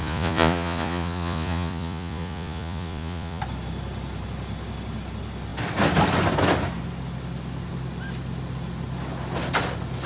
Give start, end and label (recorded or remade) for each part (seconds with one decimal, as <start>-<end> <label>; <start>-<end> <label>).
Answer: 0.0-3.4 remade; 3.4-10.1 recorded